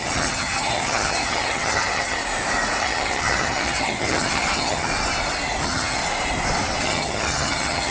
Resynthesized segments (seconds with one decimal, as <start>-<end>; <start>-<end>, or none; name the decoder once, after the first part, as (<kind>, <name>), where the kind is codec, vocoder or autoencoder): 0.0-2.2 (vocoder, HiFi-GAN); 2.8-4.9; 5.6-6.0; 6.8-7.9

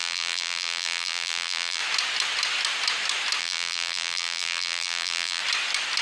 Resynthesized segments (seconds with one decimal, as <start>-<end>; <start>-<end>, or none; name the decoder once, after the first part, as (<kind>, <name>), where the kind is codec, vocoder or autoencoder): 0.0-1.8 (vocoder, BigVGAN v2); 3.4-5.4

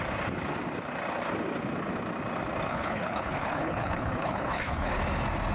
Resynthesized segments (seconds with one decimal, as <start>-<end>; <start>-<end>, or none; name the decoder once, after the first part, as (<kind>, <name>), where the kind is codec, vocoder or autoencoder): 2.7-5.0 (codec, HILCodec)

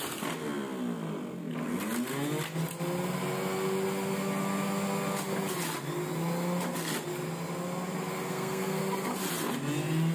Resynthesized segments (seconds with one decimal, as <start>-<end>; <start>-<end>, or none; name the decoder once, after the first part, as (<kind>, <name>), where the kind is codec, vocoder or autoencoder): 8.3-8.8 (codec, SNAC)

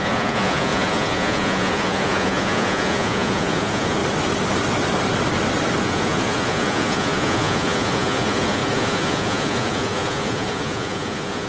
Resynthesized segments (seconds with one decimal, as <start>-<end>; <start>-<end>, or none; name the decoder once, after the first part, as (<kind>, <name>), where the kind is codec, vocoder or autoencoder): 0.0-4.0 (vocoder, Vocos); 5.8-11.5

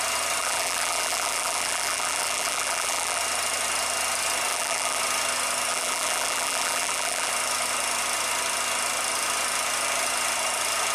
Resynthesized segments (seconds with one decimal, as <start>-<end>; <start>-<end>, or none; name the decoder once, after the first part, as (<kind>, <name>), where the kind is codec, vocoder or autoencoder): 0.4-3.2 (vocoder, BigVGAN v2); 4.5-5.0; 5.7-7.3

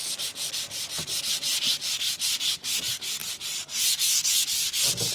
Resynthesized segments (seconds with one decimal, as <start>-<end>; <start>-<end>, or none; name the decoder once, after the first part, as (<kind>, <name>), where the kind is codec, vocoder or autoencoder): 0.0-1.2 (vocoder, BigVGAN v2); 1.7-2.8; 3.2-3.8